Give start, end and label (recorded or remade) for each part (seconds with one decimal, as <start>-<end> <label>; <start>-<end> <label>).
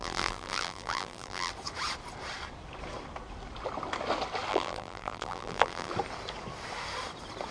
0.0-1.5 remade; 1.5-4.5 recorded; 4.5-5.9 remade; 5.9-7.5 recorded